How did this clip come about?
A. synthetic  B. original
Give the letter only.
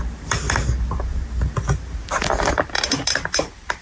B